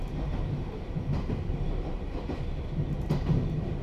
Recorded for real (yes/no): yes